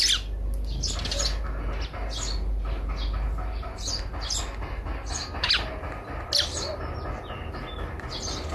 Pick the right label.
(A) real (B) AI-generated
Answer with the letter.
A